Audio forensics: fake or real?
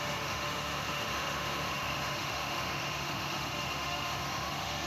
fake